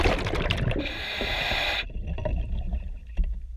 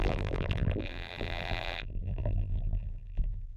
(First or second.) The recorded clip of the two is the first